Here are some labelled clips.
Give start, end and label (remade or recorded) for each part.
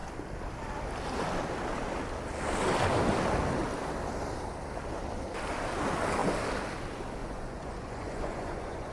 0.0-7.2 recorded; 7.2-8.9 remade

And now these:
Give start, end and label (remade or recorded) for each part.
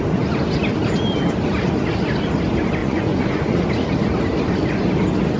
0.0-2.8 recorded; 2.8-3.7 remade; 3.7-5.4 recorded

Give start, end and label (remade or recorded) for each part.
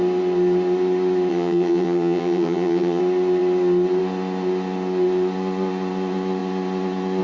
0.0-1.3 recorded; 1.3-3.0 remade; 3.0-7.2 recorded